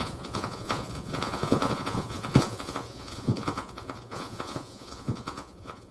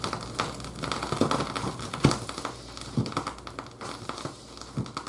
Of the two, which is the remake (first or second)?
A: first